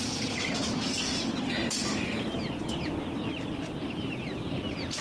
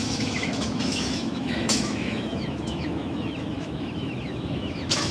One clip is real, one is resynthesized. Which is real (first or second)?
first